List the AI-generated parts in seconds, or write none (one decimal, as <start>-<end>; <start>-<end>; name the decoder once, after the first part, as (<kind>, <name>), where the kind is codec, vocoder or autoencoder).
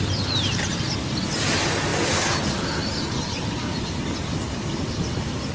none